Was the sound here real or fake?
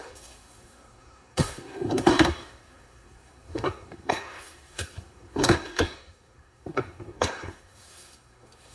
fake